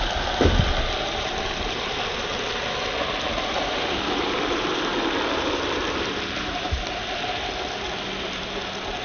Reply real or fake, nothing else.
fake